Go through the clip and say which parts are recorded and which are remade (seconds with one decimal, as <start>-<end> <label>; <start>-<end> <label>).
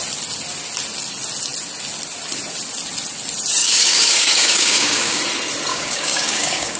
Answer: 0.0-3.6 recorded; 3.6-5.2 remade; 5.2-5.7 recorded; 5.7-6.8 remade